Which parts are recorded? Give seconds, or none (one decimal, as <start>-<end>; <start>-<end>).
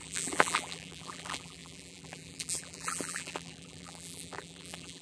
none